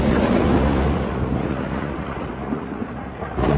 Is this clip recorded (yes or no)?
no